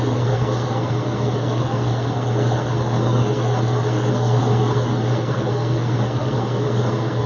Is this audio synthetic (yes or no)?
yes